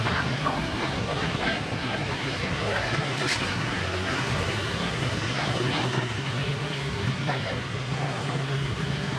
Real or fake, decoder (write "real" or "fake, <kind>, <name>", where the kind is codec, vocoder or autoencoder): fake, codec, SNAC